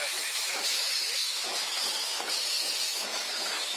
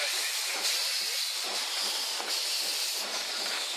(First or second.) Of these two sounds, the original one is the second